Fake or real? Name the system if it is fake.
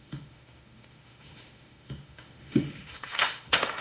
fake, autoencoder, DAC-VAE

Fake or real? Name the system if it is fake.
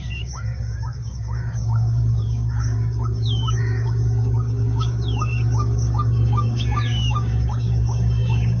fake, codec, DAC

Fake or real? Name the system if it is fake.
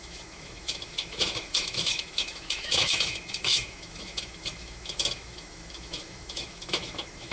fake, autoencoder, DAC-VAE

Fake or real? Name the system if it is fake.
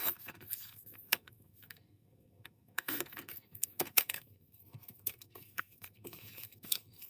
fake, codec, SNAC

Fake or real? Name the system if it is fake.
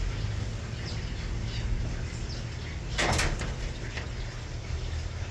real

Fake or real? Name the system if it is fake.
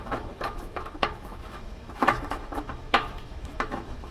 fake, autoencoder, DAC-VAE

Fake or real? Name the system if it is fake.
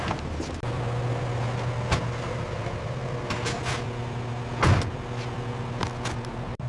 real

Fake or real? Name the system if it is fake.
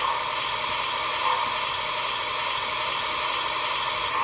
real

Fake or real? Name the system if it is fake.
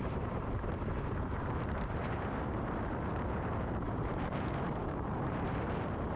fake, vocoder, BigVGAN v2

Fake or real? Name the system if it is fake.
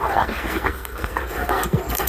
fake, codec, SNAC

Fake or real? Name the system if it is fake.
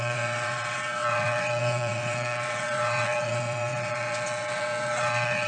fake, vocoder, WaveNeXt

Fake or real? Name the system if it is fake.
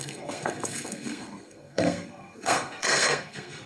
fake, codec, SNAC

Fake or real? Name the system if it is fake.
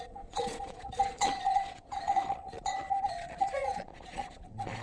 fake, vocoder, Vocos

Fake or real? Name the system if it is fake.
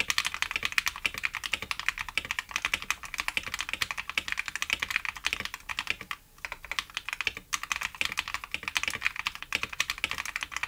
real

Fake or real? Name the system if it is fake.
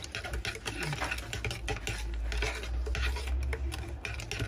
real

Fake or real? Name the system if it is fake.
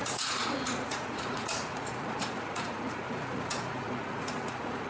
fake, vocoder, Vocos